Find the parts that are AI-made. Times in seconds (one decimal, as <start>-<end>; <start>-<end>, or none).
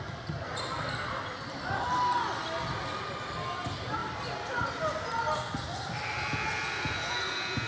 none